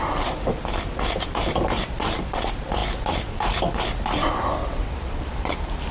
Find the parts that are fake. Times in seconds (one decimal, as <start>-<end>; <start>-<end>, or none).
4.6-5.2